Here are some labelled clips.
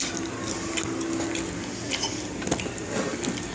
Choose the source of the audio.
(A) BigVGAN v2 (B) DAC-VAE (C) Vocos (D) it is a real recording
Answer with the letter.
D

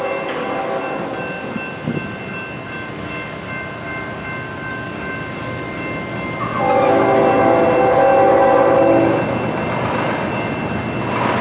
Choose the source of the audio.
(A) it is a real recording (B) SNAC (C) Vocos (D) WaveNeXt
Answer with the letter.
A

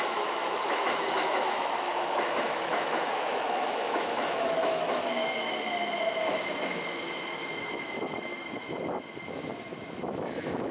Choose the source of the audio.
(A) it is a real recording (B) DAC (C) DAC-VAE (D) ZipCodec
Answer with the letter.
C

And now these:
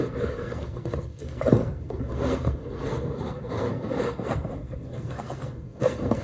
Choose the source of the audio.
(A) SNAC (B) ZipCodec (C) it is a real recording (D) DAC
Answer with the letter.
A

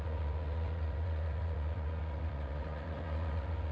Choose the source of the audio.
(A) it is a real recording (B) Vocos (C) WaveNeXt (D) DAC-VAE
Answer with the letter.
B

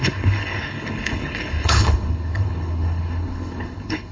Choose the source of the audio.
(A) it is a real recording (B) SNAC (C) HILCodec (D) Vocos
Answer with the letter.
C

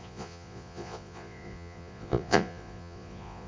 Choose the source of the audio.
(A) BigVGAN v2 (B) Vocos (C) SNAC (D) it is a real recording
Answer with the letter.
B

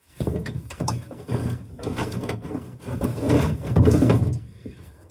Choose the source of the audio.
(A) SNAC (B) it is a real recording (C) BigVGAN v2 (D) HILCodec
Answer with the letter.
A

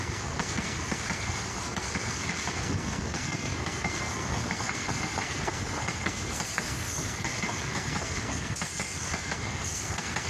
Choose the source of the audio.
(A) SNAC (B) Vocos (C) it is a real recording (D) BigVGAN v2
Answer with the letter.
A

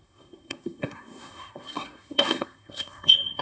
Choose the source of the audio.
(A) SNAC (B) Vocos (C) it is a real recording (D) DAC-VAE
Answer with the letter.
A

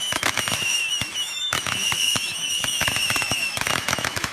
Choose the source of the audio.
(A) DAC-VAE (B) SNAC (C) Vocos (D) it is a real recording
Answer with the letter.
A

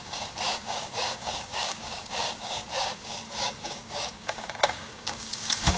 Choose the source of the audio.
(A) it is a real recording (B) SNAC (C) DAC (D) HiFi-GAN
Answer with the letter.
C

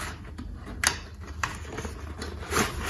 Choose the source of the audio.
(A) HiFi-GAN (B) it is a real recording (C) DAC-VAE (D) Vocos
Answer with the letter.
B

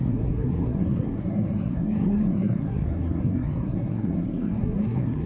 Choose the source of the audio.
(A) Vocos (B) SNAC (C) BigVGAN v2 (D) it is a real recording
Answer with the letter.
B